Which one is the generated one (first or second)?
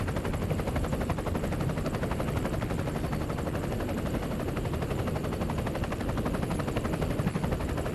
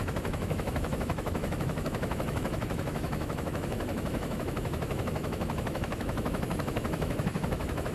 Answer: second